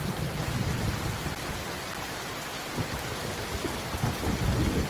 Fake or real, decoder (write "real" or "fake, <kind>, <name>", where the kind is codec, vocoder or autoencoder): real